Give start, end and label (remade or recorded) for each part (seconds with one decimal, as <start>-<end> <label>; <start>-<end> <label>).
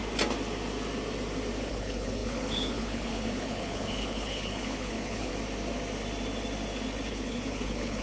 0.0-1.7 recorded; 1.7-5.3 remade; 5.3-7.1 recorded; 7.1-8.0 remade